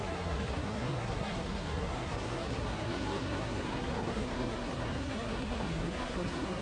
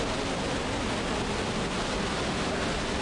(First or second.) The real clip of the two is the second